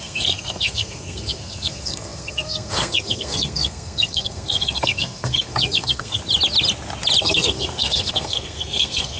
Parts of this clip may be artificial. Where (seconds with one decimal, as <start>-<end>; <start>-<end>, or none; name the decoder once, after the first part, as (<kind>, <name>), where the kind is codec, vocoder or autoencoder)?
0.0-6.2 (codec, SNAC); 7.2-9.2